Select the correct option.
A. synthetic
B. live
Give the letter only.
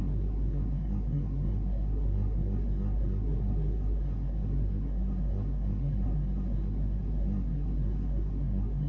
A